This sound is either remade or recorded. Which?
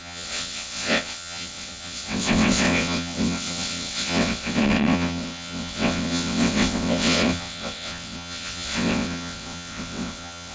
remade